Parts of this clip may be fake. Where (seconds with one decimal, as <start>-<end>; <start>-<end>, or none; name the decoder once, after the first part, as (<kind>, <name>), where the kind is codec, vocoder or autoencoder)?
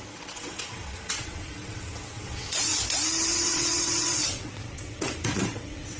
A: 0.0-2.7 (vocoder, WaveNeXt); 3.3-6.0